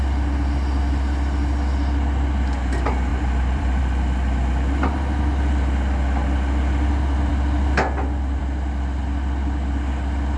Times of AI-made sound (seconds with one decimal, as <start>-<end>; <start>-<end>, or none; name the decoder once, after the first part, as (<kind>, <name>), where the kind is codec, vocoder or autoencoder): 3.1-3.8 (vocoder, BigVGAN v2)